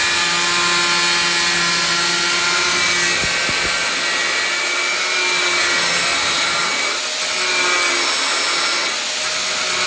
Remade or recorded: recorded